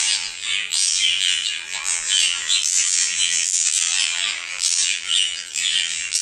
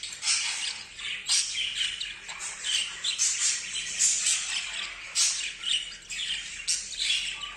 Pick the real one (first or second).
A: second